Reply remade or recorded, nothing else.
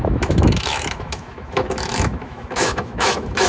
remade